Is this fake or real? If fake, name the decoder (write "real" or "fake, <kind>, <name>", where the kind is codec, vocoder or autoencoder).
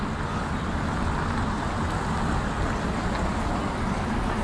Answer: real